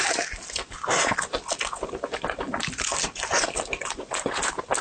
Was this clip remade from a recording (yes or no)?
no